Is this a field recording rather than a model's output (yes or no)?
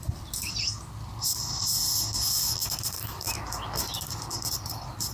yes